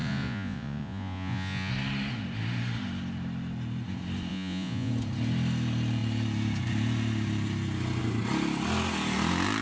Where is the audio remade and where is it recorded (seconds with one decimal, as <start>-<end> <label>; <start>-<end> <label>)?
0.0-1.7 remade; 1.7-4.3 recorded; 4.3-4.9 remade; 4.9-9.6 recorded

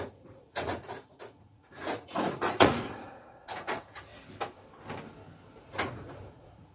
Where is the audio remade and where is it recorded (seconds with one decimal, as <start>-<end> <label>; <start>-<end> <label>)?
0.0-4.1 remade; 4.1-5.6 recorded; 5.6-6.7 remade

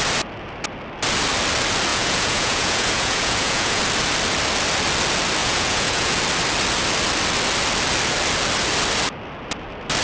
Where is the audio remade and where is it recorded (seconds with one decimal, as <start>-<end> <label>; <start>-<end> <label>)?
0.0-1.9 recorded; 1.9-3.8 remade; 3.8-5.4 recorded; 5.4-6.1 remade; 6.1-10.0 recorded

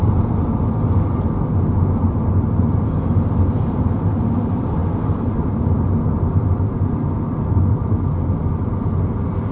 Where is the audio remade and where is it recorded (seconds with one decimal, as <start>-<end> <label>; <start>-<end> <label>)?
0.0-9.5 recorded